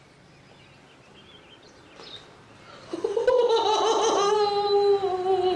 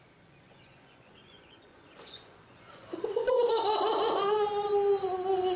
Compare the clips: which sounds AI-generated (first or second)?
second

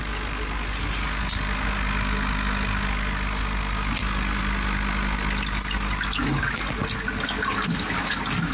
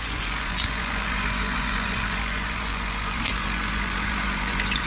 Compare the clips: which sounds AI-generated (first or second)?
second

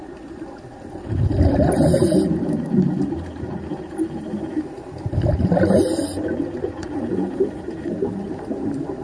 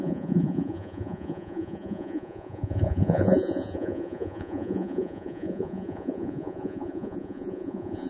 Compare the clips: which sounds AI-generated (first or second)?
second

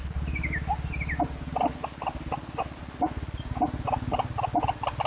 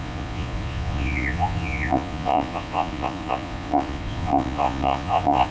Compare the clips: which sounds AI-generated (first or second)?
second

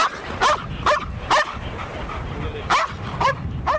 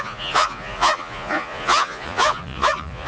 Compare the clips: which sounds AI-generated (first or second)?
second